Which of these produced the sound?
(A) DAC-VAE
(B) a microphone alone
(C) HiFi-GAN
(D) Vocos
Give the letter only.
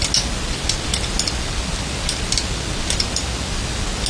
B